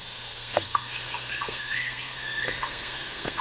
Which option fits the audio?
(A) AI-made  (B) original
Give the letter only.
A